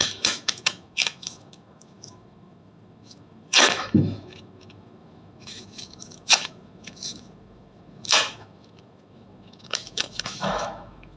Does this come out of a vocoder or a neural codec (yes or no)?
yes